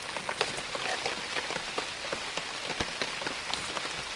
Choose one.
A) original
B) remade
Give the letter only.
A